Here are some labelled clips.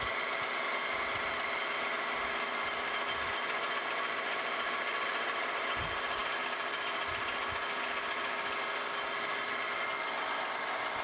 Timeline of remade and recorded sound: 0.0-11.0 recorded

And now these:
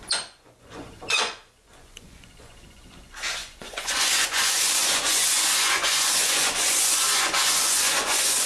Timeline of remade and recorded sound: 0.0-8.5 remade

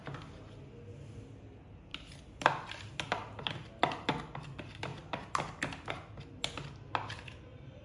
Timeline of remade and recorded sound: 0.0-7.8 recorded

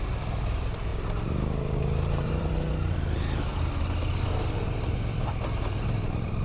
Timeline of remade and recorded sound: 0.0-3.5 remade; 3.5-4.7 recorded; 4.7-6.4 remade

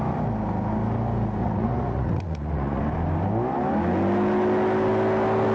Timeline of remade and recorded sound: 0.0-1.4 recorded; 1.4-2.8 remade; 2.8-5.5 recorded

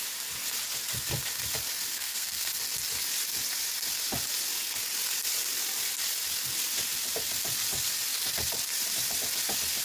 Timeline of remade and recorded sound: 0.0-1.9 recorded; 1.9-2.5 remade; 2.5-9.8 recorded

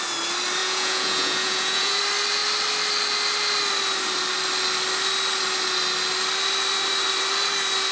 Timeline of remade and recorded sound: 0.0-0.6 recorded; 0.6-2.0 remade; 2.0-7.9 recorded

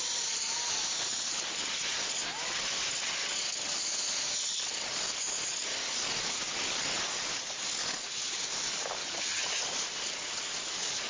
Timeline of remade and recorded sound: 0.0-9.0 recorded; 9.0-9.5 remade; 9.5-11.1 recorded